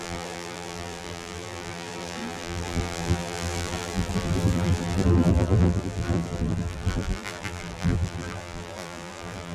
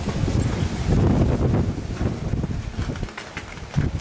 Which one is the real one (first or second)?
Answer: second